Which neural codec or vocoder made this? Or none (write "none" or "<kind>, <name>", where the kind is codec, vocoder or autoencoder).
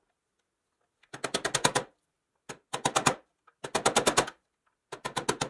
none